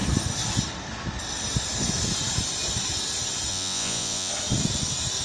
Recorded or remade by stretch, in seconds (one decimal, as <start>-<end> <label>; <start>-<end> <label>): 0.0-3.5 recorded; 3.5-4.3 remade; 4.3-5.2 recorded